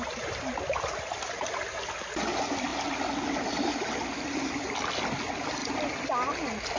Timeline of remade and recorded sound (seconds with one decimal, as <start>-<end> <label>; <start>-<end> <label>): 0.0-6.8 recorded

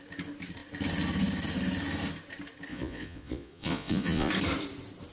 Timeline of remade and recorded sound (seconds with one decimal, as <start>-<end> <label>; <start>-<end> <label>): 0.0-2.7 recorded; 2.7-4.3 remade; 4.3-5.1 recorded

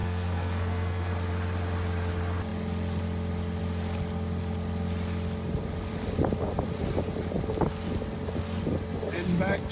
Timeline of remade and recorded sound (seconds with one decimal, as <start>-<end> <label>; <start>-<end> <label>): 0.0-1.1 remade; 1.1-9.7 recorded

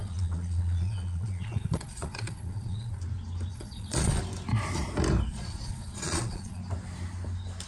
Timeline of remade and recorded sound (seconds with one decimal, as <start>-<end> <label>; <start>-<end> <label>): 0.0-3.0 remade; 3.0-3.5 recorded; 3.5-4.2 remade; 4.2-5.3 recorded; 5.3-6.6 remade; 6.6-7.7 recorded

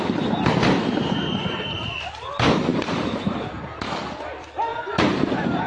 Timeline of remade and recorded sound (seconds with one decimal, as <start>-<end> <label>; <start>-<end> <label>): 0.0-0.6 recorded; 0.6-2.1 remade; 2.1-2.7 recorded; 2.7-3.8 remade; 3.8-4.7 recorded; 4.7-5.7 remade

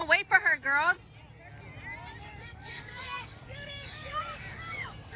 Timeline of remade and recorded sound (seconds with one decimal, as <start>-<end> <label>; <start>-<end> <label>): 0.0-2.2 recorded; 2.2-5.2 remade

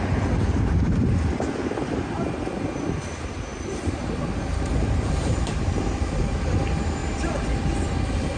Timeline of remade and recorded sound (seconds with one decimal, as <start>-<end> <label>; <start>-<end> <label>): 0.0-3.5 recorded; 3.5-6.3 remade; 6.3-8.4 recorded

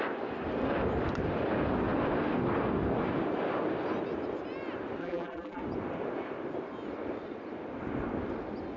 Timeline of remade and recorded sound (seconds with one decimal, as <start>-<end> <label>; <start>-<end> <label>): 0.0-5.0 recorded; 5.0-5.6 remade; 5.6-8.8 recorded